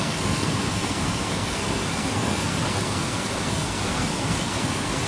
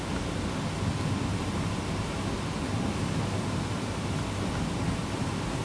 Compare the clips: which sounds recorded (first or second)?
second